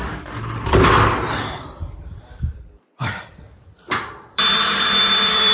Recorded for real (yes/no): no